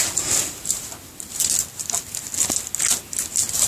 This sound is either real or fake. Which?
real